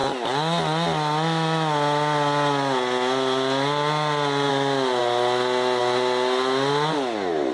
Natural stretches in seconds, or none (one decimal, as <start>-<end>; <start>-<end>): 0.0-7.5